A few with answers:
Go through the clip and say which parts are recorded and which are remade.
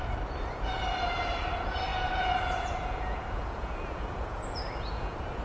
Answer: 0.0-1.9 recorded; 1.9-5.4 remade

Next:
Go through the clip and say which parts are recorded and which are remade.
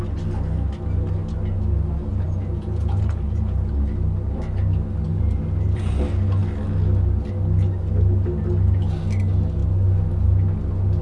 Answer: 0.0-2.1 recorded; 2.1-3.7 remade; 3.7-5.1 recorded; 5.1-5.9 remade; 5.9-11.0 recorded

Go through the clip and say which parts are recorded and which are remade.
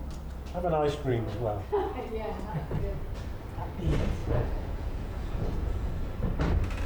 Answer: 0.0-4.2 recorded; 4.2-5.9 remade; 5.9-6.9 recorded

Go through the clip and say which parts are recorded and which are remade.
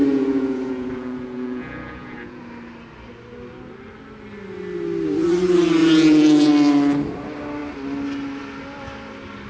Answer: 0.0-2.4 remade; 2.4-5.8 recorded; 5.8-6.5 remade; 6.5-9.5 recorded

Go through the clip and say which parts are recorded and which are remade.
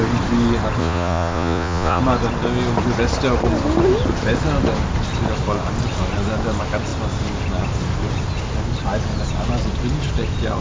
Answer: 0.0-0.8 recorded; 0.8-2.0 remade; 2.0-10.6 recorded